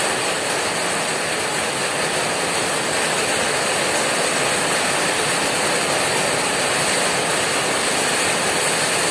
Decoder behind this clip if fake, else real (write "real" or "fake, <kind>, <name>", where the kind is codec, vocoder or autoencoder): real